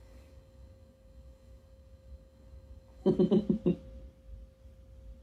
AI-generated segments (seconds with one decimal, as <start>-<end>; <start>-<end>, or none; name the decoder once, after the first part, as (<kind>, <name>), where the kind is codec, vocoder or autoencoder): 0.0-3.1 (codec, DAC)